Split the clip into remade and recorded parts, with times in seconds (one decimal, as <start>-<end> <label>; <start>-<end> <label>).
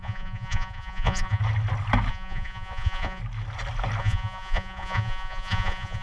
0.0-1.4 remade; 1.4-2.1 recorded; 2.1-3.2 remade; 3.2-4.0 recorded; 4.0-6.0 remade